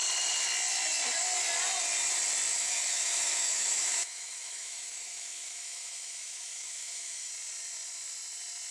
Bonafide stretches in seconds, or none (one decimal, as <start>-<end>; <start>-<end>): 0.0-2.5; 7.3-8.7